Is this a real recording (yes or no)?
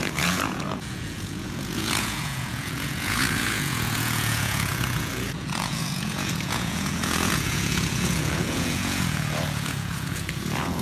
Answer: no